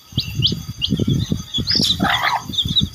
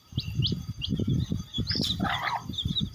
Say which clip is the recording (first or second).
first